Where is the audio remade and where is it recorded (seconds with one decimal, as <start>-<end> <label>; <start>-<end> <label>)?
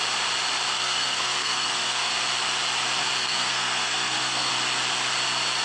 0.0-0.7 recorded; 0.7-2.1 remade; 2.1-3.2 recorded; 3.2-4.5 remade; 4.5-5.6 recorded